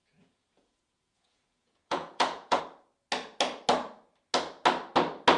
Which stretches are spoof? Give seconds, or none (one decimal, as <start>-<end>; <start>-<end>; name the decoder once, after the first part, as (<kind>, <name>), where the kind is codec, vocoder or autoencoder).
0.0-2.6 (vocoder, Vocos)